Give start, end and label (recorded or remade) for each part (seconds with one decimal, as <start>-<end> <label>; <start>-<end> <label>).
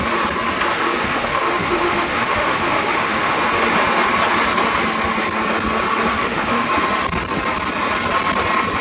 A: 0.0-0.7 recorded; 0.7-3.4 remade; 3.4-6.1 recorded; 6.1-6.7 remade; 6.7-8.8 recorded